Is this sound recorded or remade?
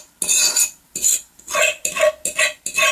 recorded